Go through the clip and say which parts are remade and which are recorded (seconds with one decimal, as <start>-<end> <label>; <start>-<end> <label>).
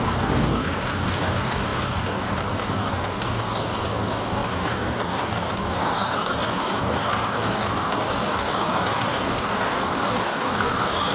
0.0-11.1 remade